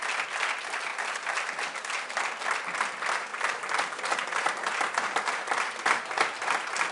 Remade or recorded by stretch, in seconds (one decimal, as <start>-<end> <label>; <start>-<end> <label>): 0.0-6.9 recorded